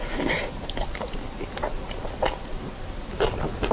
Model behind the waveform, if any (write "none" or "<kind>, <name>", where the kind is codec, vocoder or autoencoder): none